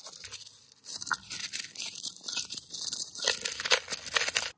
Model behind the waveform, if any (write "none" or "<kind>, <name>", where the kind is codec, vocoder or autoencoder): none